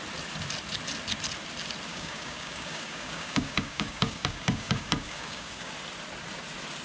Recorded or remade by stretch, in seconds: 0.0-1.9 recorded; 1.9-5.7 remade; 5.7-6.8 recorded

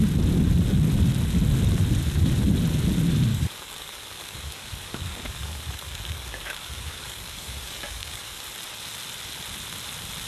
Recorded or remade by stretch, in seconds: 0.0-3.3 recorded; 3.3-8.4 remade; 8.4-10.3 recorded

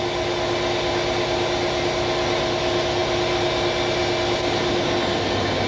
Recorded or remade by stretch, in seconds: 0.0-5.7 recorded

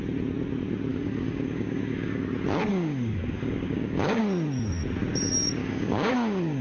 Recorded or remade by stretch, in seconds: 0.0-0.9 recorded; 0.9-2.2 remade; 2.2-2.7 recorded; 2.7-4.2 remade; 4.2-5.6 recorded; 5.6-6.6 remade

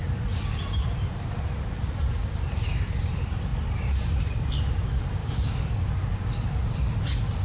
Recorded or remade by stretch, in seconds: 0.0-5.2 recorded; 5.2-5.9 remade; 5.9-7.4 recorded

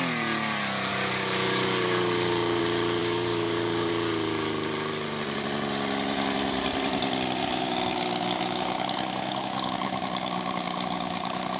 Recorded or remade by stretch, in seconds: 0.0-0.9 recorded; 0.9-2.6 remade; 2.6-3.0 recorded; 3.0-3.9 remade; 3.9-7.4 recorded; 7.4-11.6 remade